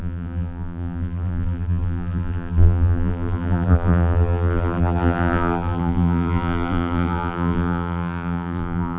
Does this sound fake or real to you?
fake